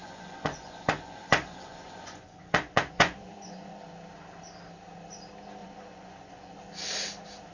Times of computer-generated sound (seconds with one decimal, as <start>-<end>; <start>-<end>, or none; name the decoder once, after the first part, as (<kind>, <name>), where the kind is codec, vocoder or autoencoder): 0.0-3.7 (vocoder, Vocos); 5.6-6.5

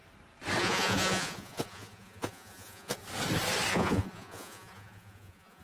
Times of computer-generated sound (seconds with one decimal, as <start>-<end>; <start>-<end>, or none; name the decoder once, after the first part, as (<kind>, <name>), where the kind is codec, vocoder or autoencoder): 0.6-3.0 (vocoder, Vocos); 3.7-5.6

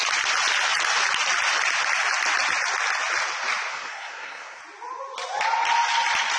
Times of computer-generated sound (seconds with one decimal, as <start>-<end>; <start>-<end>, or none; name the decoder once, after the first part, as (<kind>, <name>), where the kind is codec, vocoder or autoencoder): 3.7-4.6 (codec, SNAC)

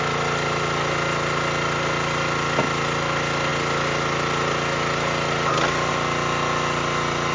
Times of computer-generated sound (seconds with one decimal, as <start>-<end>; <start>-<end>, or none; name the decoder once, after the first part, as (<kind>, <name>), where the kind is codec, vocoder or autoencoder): none

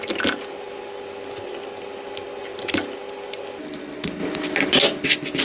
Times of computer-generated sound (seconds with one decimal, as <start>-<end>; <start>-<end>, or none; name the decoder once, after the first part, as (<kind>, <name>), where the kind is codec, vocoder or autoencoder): none

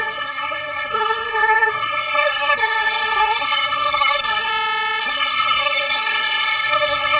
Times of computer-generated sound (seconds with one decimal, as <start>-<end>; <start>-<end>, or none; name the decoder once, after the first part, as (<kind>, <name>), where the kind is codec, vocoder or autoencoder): 0.0-4.5 (codec, SNAC); 5.0-7.2

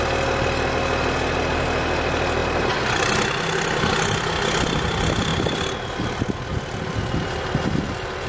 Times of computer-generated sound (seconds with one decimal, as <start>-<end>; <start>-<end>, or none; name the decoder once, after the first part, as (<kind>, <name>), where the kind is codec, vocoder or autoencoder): none

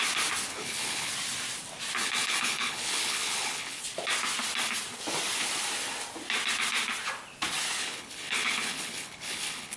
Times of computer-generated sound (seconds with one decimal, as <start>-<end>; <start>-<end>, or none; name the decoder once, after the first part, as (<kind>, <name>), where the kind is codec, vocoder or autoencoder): 0.5-1.1 (codec, HILCodec); 2.0-3.8; 7.8-9.8